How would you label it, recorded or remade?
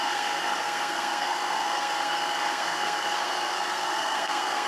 remade